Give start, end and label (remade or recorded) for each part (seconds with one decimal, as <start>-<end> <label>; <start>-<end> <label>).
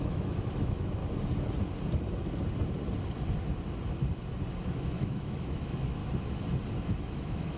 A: 0.0-1.0 remade; 1.0-4.6 recorded; 4.6-6.0 remade; 6.0-6.7 recorded; 6.7-7.6 remade